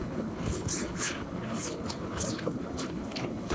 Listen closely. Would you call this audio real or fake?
fake